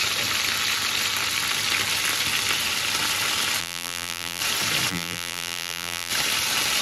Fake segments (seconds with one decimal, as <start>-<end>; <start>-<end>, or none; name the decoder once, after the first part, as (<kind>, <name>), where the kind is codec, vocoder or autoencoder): 3.6-4.4 (vocoder, BigVGAN v2); 4.9-6.1